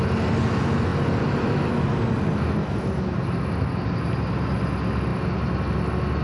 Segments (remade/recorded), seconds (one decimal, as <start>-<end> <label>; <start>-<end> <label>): 0.0-6.2 recorded